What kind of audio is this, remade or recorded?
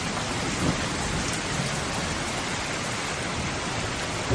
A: recorded